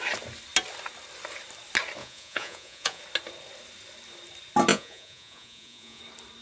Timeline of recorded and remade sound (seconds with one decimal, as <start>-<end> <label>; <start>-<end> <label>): 0.0-2.0 recorded; 2.0-3.0 remade; 3.0-4.7 recorded; 4.7-6.0 remade; 6.0-6.4 recorded